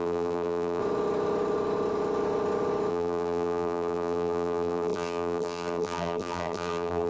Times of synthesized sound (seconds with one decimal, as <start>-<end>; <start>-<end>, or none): 0.0-0.8; 2.9-7.1